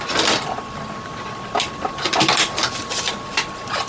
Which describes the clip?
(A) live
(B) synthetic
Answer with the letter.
B